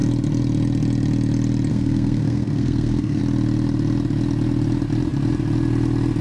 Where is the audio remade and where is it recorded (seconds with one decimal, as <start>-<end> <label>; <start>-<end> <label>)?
0.0-1.7 recorded; 1.7-3.2 remade; 3.2-6.2 recorded

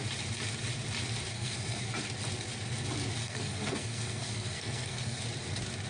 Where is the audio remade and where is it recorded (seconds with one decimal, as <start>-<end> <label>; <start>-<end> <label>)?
0.0-1.3 recorded; 1.3-1.9 remade; 1.9-3.2 recorded; 3.2-5.2 remade; 5.2-5.9 recorded

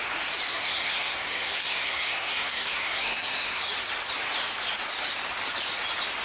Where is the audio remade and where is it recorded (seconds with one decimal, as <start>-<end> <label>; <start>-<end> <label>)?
0.0-0.5 recorded; 0.5-3.6 remade; 3.6-6.2 recorded

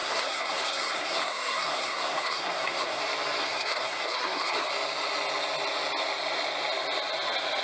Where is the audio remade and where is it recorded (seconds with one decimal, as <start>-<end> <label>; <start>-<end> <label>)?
0.0-3.0 remade; 3.0-3.4 recorded; 3.4-4.7 remade; 4.7-7.6 recorded

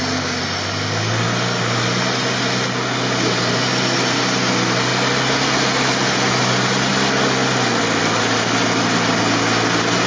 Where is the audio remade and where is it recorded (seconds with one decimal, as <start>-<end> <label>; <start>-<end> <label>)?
0.0-10.1 recorded